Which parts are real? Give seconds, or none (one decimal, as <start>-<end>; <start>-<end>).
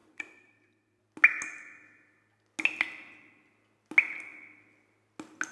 1.0-5.5